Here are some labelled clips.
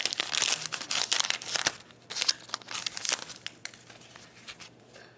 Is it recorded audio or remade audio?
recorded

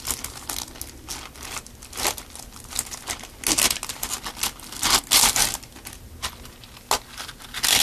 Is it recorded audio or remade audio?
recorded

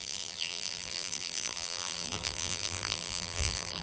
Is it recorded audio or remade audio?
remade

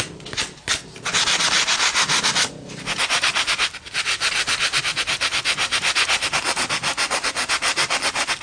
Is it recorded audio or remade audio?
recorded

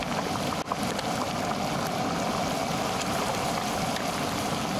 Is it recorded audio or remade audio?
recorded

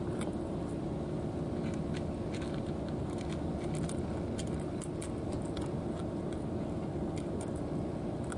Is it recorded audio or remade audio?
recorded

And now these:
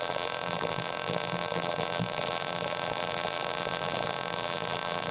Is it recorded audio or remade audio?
remade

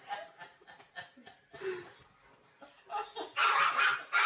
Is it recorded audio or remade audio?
recorded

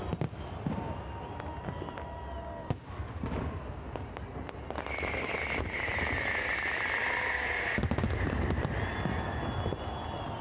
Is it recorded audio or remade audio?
recorded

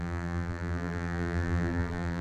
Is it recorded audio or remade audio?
remade